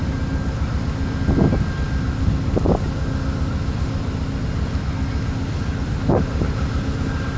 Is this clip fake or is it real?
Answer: real